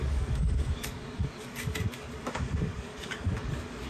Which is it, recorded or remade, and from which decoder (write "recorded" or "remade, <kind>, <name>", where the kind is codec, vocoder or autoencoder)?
remade, codec, DAC